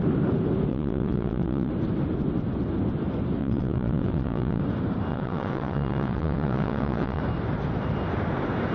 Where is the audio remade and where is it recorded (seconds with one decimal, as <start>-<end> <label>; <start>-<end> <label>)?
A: 0.0-0.7 recorded; 0.7-1.7 remade; 1.7-3.4 recorded; 3.4-4.6 remade; 4.6-5.1 recorded; 5.1-7.2 remade; 7.2-8.7 recorded